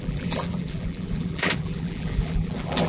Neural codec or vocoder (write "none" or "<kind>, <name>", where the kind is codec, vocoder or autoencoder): vocoder, BigVGAN v2